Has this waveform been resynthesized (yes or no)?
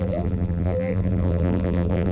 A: yes